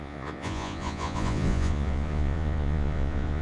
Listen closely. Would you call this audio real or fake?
fake